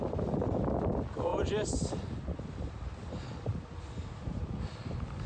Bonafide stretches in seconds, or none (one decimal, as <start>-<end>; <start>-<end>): 0.0-1.3; 3.1-3.5; 4.7-5.3